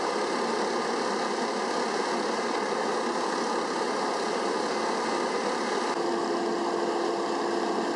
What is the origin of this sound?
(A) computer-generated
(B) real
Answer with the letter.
B